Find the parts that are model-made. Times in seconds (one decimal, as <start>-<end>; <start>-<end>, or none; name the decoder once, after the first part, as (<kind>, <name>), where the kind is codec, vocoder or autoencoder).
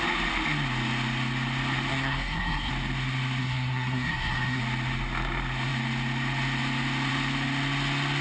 1.9-2.7 (codec, SNAC); 3.4-4.6